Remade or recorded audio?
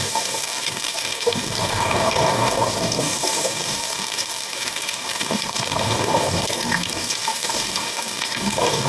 remade